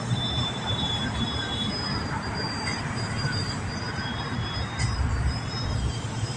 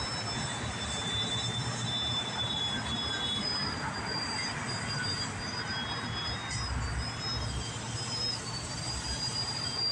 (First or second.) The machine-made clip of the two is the first